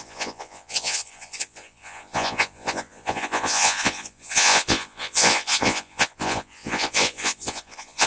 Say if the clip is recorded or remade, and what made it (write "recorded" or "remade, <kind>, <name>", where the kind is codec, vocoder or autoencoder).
remade, vocoder, Vocos